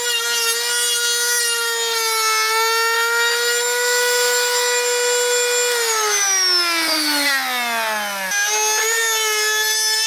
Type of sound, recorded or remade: recorded